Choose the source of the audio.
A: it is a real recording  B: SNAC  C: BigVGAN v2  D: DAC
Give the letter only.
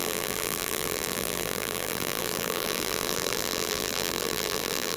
C